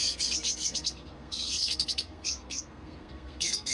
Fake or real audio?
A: fake